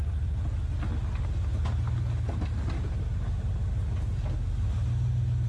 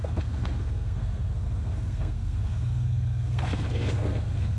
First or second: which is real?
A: first